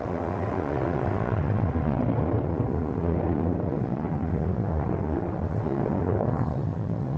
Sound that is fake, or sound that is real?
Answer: fake